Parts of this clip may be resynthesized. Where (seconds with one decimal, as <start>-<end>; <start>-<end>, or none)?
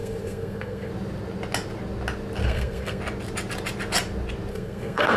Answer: 0.0-0.9; 2.4-3.0; 4.5-5.2